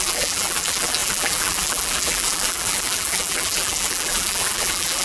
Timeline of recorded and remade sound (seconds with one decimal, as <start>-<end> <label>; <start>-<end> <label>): 0.0-5.0 remade